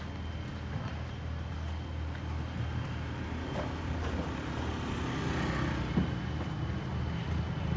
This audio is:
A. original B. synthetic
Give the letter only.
A